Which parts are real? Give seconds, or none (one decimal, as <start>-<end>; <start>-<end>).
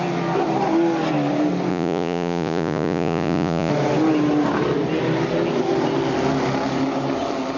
0.0-1.7; 3.7-7.6